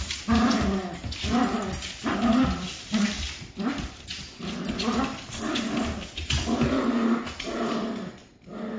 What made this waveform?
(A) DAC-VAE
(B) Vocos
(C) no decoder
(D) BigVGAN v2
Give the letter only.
C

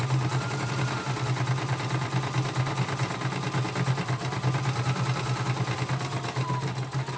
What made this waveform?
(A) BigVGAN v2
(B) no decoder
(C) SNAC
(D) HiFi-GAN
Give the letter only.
B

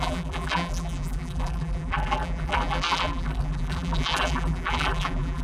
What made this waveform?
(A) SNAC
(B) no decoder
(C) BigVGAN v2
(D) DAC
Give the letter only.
C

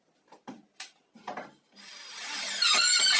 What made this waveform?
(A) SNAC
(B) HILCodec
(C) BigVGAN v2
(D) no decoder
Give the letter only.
D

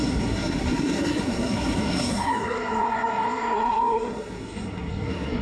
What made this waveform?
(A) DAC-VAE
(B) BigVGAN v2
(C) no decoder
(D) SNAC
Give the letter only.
D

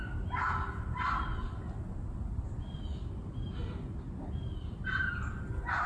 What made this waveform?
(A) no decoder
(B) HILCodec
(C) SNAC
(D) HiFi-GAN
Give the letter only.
A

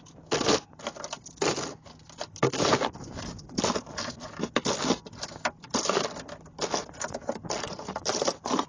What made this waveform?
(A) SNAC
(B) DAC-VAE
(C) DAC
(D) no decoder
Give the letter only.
D